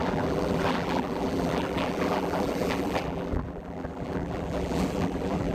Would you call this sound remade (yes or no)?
yes